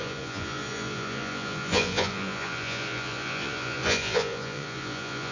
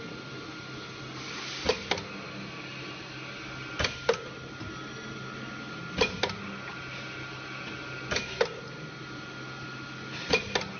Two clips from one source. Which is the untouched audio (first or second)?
second